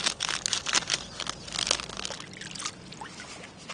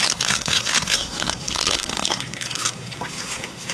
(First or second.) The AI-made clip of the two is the second